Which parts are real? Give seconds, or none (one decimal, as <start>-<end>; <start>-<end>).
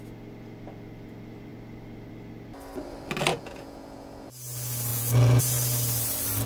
0.0-3.3; 4.3-4.9; 5.4-6.5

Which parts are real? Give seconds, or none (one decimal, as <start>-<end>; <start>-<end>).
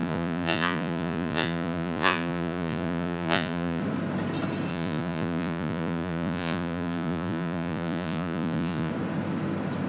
3.8-4.7; 8.9-9.9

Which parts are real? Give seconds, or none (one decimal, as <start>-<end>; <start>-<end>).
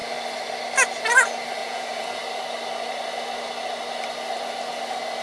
0.0-1.6; 2.2-5.2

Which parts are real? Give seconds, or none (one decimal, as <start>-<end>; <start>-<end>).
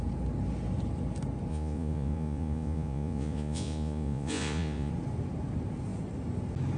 0.0-1.5; 4.9-6.8